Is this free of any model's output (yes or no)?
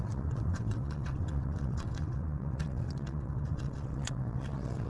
no